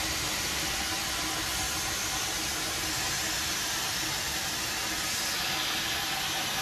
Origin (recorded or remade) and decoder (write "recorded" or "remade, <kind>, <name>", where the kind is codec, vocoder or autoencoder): recorded